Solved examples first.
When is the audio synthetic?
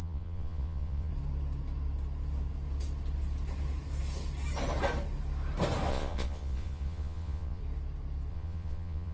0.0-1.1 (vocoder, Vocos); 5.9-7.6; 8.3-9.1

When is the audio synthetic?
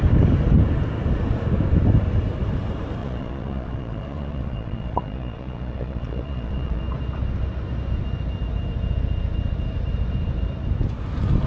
3.0-6.8 (vocoder, Vocos)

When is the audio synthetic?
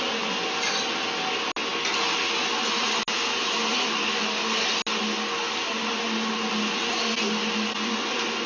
none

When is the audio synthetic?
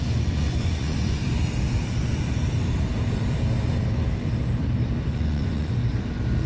0.0-1.2 (vocoder, Vocos); 5.1-5.8